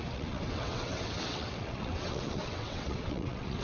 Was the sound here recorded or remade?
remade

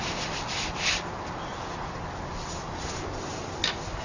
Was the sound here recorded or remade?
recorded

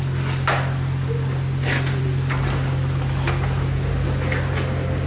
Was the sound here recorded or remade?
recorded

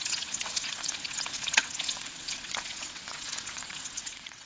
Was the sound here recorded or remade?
remade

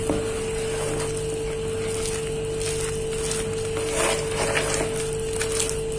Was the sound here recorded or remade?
recorded